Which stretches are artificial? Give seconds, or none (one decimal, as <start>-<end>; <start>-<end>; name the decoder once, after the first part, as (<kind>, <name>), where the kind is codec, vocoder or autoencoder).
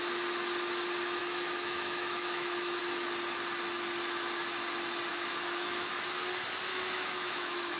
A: 1.2-2.8 (autoencoder, DAC-VAE); 5.1-5.9; 6.7-7.8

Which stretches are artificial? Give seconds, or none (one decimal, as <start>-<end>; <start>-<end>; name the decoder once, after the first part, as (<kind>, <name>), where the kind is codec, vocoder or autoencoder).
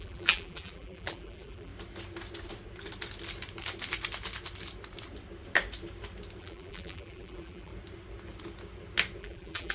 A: 0.0-1.7 (vocoder, BigVGAN v2); 6.4-7.7; 9.2-9.7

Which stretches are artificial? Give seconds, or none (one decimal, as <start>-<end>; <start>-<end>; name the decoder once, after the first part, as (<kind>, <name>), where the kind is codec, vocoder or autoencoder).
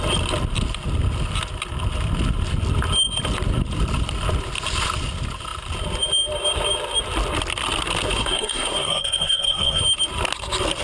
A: 8.2-9.8 (codec, SNAC)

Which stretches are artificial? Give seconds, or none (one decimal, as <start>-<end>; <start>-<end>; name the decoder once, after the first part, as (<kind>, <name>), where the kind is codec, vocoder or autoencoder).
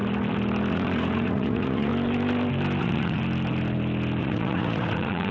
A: 0.7-1.9 (vocoder, Vocos); 2.8-3.2; 4.2-5.3